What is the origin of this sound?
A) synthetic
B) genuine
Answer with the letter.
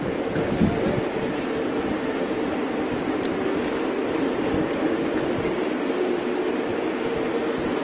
B